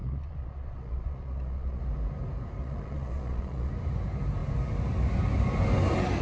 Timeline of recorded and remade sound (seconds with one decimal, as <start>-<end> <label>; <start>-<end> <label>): 0.0-1.8 remade; 1.8-2.6 recorded; 2.6-3.7 remade; 3.7-6.2 recorded